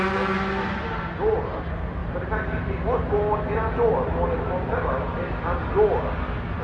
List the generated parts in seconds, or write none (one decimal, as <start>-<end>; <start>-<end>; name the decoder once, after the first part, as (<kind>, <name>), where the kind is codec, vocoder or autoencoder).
none